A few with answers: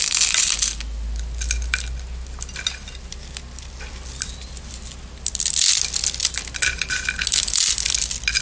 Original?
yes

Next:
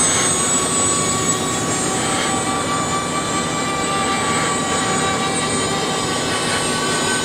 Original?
yes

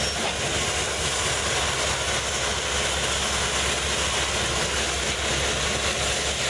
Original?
yes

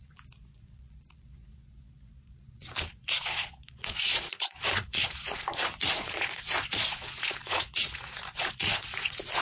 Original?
no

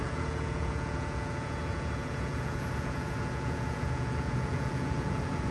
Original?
no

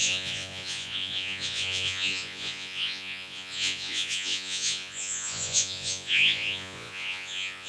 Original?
no